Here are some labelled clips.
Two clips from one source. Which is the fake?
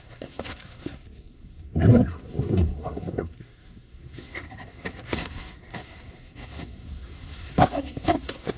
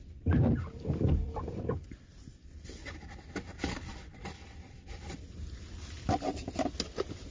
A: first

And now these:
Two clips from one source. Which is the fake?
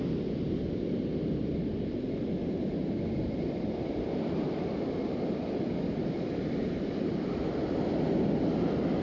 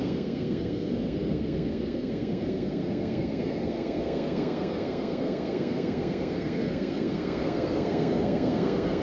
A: second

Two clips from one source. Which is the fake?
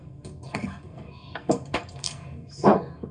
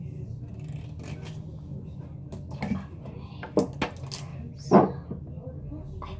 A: first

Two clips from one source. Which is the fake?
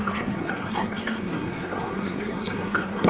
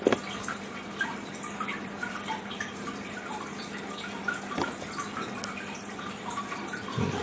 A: first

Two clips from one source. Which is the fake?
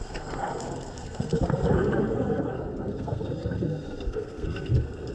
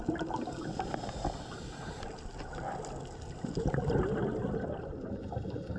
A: first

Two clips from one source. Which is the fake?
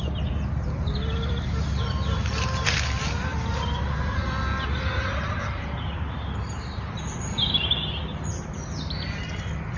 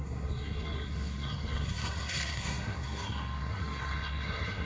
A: second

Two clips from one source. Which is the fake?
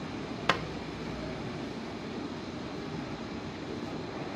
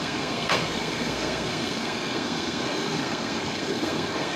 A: second